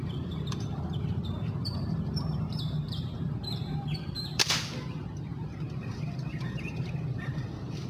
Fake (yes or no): yes